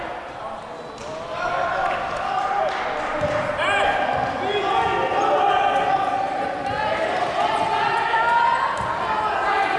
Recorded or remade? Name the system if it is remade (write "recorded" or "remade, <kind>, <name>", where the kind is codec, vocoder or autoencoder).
recorded